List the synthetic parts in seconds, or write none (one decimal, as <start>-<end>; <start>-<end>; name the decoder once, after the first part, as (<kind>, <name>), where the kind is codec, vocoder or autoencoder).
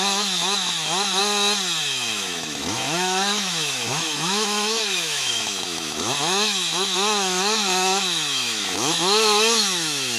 0.0-1.2 (autoencoder, DAC-VAE); 1.8-10.2